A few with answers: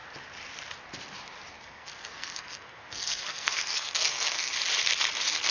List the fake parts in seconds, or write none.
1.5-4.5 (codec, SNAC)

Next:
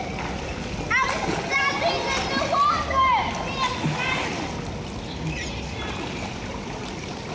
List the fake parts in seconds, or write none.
none

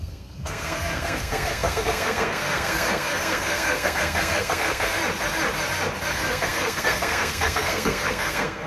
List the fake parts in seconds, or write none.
0.0-5.0 (codec, SNAC); 6.1-8.7

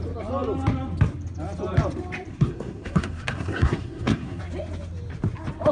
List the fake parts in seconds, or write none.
2.3-4.4 (codec, SNAC)

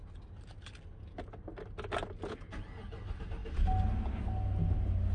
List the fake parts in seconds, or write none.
none

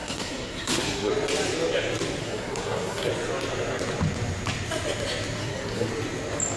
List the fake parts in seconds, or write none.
0.0-1.1 (codec, SNAC); 2.2-3.1; 5.4-5.9